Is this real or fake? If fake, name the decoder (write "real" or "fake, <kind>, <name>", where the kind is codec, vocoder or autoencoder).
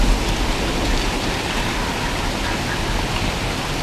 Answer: real